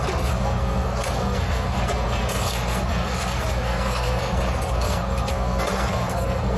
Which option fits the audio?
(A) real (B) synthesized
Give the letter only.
B